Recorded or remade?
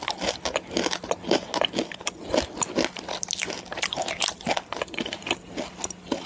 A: recorded